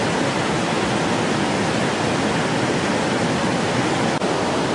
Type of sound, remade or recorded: recorded